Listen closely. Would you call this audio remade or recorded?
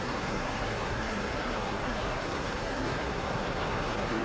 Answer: remade